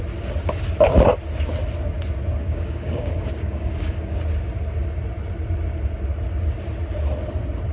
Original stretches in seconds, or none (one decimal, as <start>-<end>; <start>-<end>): 0.0-2.4; 4.2-7.7